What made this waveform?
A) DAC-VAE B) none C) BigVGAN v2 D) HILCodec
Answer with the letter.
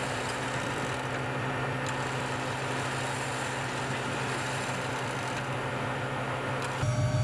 B